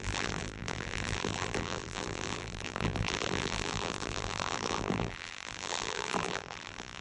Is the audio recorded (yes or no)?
no